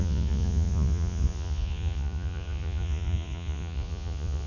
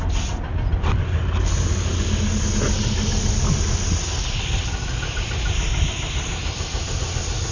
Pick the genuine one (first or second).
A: second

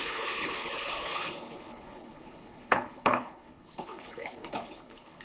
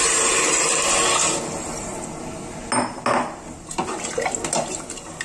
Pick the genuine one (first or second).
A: second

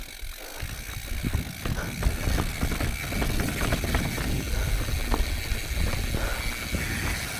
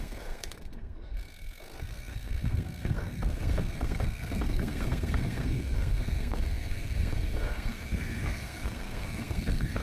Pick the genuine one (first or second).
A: first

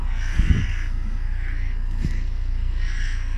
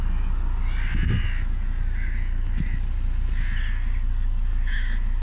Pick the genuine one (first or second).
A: second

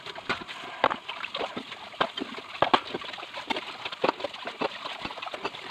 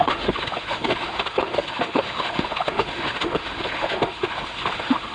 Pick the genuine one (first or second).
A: first